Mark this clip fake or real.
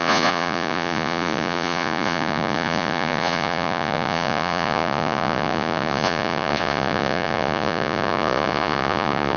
fake